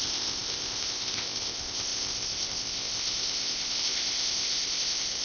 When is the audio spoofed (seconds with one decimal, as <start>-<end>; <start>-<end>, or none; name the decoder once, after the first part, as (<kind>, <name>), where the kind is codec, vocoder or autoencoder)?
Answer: 0.0-5.2 (codec, ZipCodec)